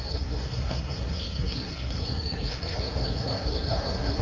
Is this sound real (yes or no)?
no